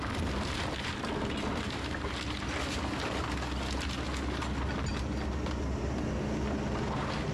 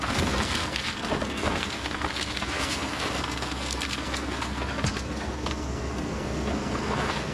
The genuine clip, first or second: first